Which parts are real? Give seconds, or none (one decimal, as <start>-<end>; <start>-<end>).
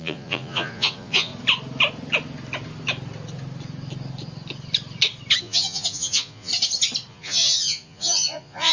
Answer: 1.3-5.4; 6.5-7.1